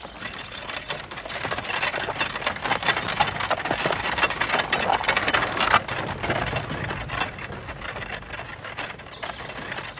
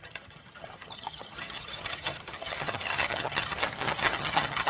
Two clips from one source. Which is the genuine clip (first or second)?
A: first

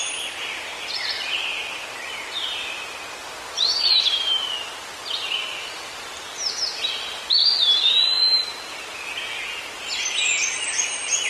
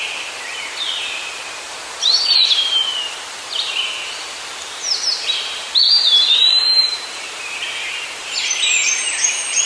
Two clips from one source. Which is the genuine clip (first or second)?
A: first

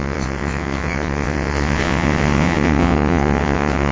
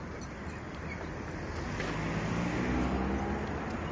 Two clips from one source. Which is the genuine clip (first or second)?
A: second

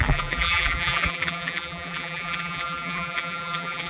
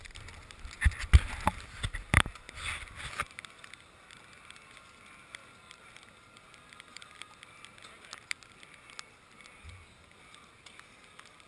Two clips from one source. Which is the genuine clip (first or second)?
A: second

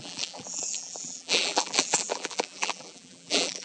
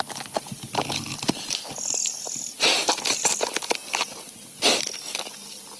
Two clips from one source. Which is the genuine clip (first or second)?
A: second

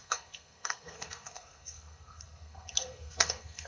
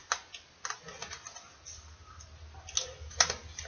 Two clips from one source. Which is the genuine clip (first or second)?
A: second